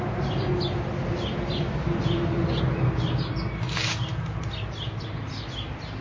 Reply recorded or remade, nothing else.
recorded